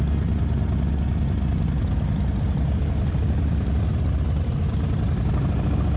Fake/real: real